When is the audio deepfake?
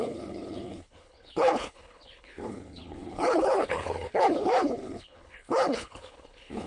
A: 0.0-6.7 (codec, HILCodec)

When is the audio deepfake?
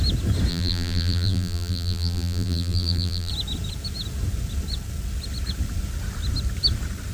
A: 0.5-3.3 (vocoder, BigVGAN v2)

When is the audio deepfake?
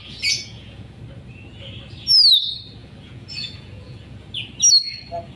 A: 0.0-1.0 (vocoder, Vocos); 2.8-4.3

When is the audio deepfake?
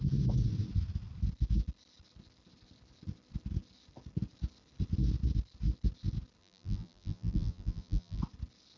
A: 6.4-8.2 (vocoder, BigVGAN v2)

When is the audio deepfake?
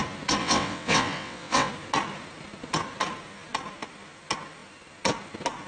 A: 0.4-1.7 (vocoder, WaveNeXt)